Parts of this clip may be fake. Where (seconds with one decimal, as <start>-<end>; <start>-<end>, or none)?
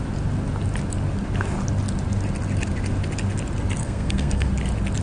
3.8-4.5